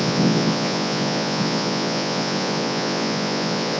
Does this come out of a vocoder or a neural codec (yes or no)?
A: yes